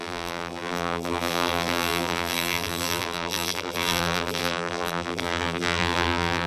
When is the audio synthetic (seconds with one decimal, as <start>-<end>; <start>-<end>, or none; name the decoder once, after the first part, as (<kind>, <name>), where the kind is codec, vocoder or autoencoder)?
0.0-6.5 (vocoder, BigVGAN v2)